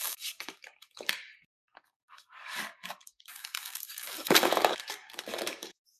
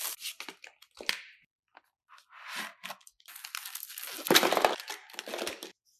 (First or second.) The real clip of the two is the second